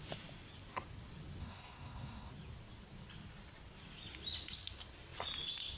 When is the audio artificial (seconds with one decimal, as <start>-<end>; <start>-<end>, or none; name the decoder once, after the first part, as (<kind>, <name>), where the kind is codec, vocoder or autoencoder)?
1.4-2.3 (codec, SNAC)